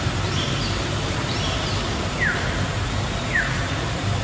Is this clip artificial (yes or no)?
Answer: yes